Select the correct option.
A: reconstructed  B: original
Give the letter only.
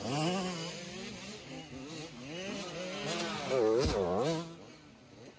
B